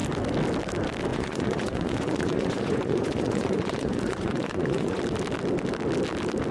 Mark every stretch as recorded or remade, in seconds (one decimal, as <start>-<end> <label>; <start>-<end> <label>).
0.0-1.1 recorded; 1.1-5.0 remade; 5.0-6.5 recorded